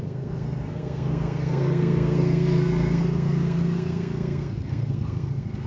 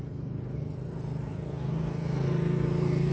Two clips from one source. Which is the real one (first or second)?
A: second